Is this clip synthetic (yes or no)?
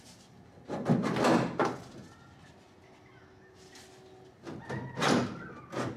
no